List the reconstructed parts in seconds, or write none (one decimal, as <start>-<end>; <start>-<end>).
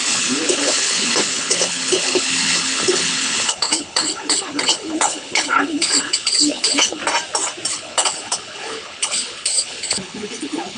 0.0-7.0; 7.7-10.8